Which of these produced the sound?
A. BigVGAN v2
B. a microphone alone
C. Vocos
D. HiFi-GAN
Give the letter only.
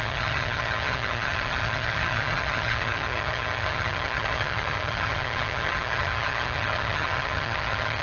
D